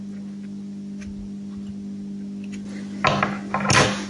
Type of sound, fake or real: real